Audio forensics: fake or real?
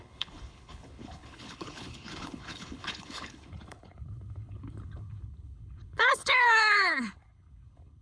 fake